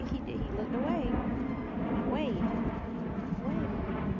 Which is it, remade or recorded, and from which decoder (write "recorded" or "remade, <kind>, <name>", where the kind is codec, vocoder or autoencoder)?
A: recorded